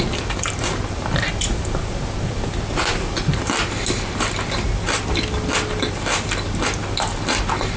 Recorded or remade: recorded